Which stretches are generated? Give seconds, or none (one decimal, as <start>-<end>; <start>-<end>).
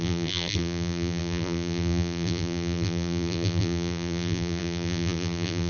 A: 0.0-5.7